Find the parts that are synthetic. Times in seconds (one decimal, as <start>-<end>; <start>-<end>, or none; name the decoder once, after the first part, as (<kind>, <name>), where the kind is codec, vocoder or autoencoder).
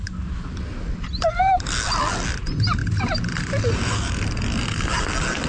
2.8-4.4 (vocoder, BigVGAN v2)